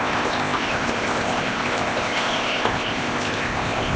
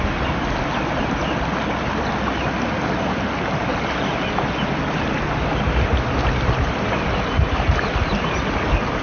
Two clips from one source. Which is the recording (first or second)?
second